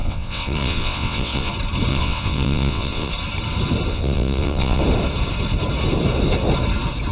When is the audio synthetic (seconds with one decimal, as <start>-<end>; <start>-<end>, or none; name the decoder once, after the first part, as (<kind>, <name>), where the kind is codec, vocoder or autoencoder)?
0.0-1.5 (vocoder, WaveNeXt); 1.9-3.1; 3.9-4.8